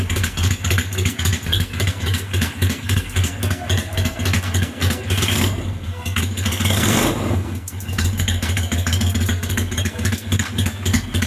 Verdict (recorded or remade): remade